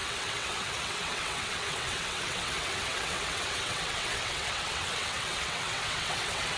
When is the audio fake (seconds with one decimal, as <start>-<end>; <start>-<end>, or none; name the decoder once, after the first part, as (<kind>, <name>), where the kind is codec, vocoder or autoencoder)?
0.0-6.6 (vocoder, WaveNeXt)